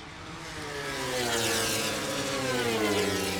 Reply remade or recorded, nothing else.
recorded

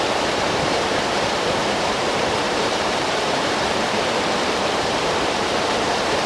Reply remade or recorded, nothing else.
remade